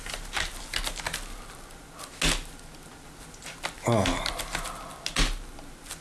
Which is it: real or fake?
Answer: real